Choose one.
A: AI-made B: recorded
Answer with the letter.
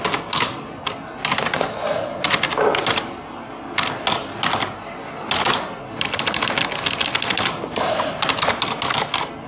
B